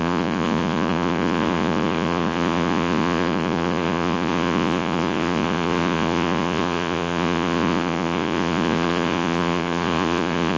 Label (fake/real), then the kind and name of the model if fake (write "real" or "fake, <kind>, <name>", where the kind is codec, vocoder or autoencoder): fake, vocoder, Vocos